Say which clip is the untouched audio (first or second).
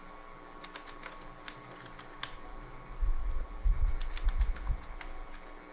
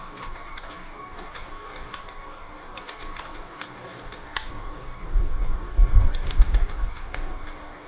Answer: first